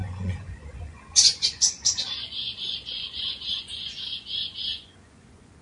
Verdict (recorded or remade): remade